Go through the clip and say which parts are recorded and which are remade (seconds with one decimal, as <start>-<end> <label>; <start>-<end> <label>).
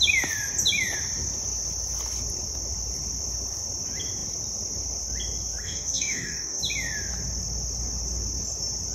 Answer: 0.0-5.6 recorded; 5.6-6.6 remade; 6.6-8.9 recorded